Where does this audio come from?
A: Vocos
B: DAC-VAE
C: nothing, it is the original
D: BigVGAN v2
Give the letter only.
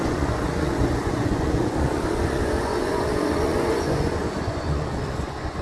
A